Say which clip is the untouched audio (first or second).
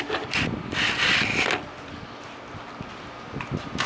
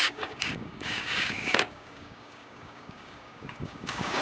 first